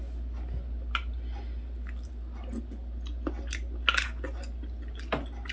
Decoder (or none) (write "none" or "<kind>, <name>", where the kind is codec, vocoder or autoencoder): none